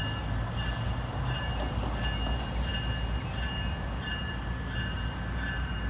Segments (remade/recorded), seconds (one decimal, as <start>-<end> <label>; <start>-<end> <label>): 0.0-5.9 recorded